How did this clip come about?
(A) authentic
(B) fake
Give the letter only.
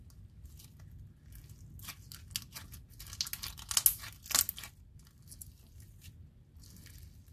A